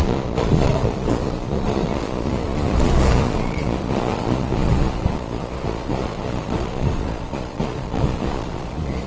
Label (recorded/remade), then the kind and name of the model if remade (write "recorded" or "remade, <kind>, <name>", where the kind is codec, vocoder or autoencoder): remade, vocoder, Vocos